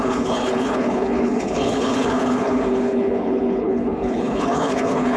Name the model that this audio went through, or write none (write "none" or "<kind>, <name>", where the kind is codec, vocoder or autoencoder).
codec, HILCodec